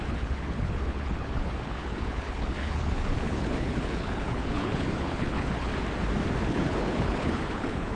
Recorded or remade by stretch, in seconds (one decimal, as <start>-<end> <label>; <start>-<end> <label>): 0.0-5.7 remade; 5.7-6.4 recorded; 6.4-8.0 remade